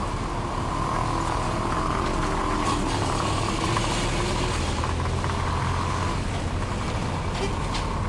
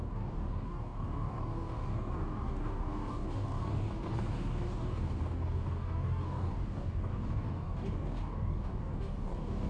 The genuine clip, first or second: first